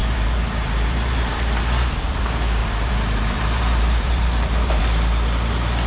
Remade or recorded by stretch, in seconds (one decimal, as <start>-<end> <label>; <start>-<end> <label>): 0.0-1.6 remade; 1.6-2.6 recorded; 2.6-4.8 remade; 4.8-5.9 recorded